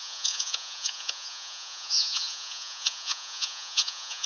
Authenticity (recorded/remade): remade